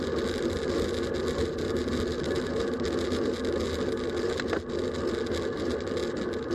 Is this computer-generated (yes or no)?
no